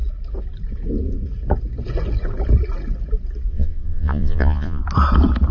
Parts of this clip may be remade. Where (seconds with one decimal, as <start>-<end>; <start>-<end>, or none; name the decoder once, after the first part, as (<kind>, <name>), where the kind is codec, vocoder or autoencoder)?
3.5-4.8 (vocoder, Vocos)